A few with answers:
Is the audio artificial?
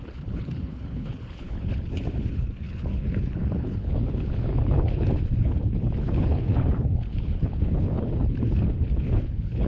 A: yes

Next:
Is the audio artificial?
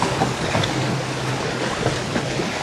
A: yes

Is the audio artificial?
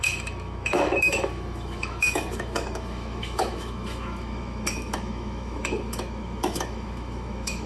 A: yes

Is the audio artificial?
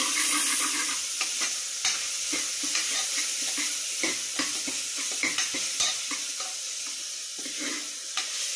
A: no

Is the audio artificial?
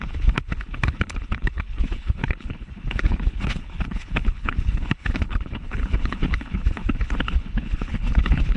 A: yes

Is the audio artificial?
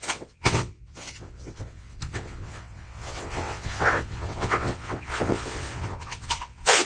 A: yes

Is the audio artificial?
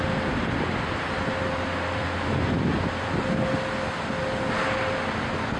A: no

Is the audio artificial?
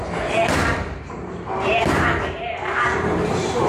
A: yes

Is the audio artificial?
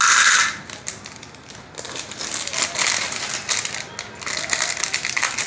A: no